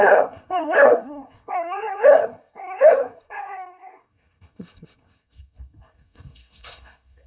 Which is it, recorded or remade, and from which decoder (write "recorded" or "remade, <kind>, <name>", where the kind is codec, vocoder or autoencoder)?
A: remade, codec, SNAC